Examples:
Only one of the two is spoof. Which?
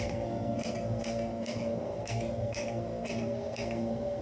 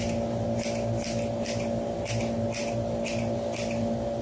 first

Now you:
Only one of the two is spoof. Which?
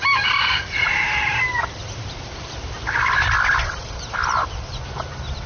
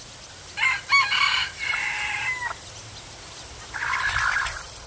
first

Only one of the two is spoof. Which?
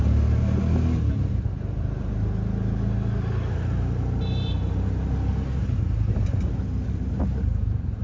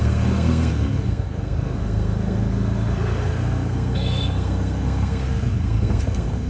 second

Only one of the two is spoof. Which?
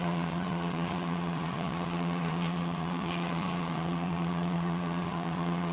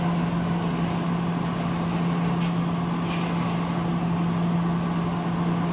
first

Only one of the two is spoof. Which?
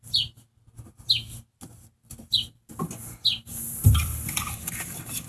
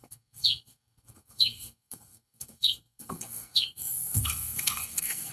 second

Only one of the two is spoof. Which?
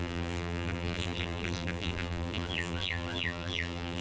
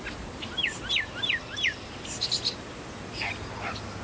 first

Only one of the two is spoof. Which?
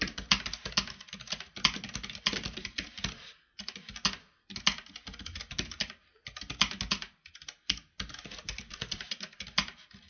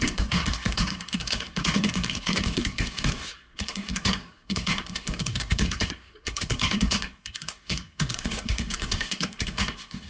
second